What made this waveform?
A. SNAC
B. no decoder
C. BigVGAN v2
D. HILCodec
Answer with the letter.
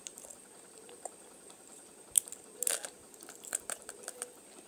B